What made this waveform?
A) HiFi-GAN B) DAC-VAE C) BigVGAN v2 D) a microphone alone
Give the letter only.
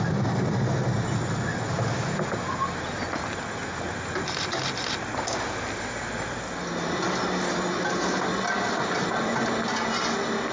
D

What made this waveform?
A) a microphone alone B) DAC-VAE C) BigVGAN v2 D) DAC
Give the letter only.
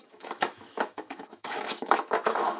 B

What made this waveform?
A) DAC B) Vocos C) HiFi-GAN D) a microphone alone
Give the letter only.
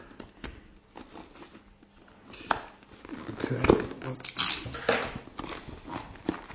D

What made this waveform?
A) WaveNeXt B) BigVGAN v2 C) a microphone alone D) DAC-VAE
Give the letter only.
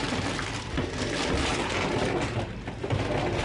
C